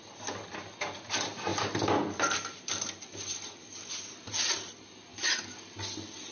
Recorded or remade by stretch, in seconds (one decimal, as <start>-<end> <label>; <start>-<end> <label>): 0.0-6.3 recorded